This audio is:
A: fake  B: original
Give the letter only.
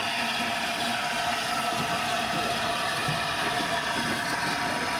B